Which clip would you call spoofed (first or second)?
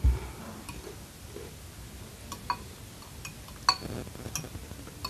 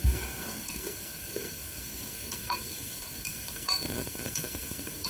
second